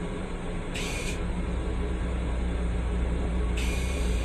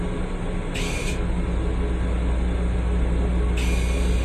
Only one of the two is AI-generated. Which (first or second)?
first